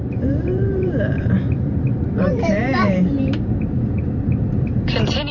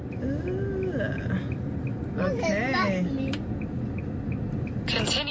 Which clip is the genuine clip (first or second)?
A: second